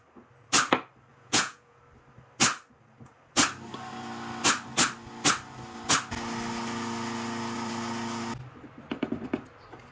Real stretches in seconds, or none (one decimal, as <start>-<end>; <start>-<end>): 0.0-1.1; 1.8-9.9